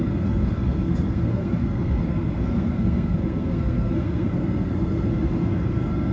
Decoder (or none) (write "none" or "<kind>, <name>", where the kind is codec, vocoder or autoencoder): codec, SNAC